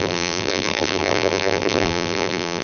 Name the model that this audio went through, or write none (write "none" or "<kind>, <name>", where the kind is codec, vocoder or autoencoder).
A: vocoder, BigVGAN v2